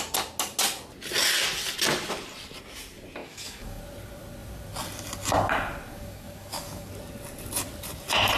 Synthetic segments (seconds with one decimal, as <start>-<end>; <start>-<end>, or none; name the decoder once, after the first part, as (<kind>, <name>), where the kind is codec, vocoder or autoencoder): 3.2-3.8 (codec, DAC); 5.9-6.9